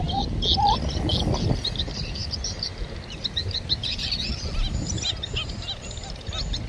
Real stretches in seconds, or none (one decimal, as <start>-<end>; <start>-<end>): 0.0-6.7